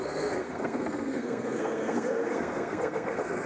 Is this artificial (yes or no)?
yes